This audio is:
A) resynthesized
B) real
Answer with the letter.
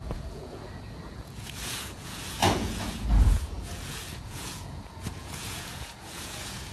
A